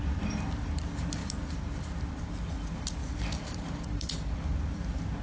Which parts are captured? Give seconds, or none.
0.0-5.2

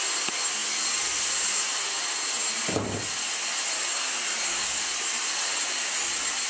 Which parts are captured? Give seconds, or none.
0.0-6.5